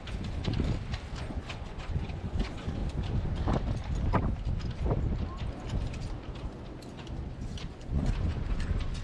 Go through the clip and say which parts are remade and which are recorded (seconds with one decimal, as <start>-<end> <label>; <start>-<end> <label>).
0.0-0.5 remade; 0.5-1.2 recorded; 1.2-2.8 remade; 2.8-7.3 recorded; 7.3-9.0 remade